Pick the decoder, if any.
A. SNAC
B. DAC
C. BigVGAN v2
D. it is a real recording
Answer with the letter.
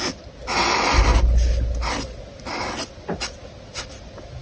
D